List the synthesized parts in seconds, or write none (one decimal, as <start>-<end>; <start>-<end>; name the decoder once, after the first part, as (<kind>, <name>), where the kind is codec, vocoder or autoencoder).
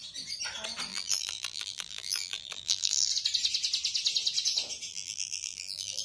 0.9-3.1 (vocoder, BigVGAN v2); 4.9-6.0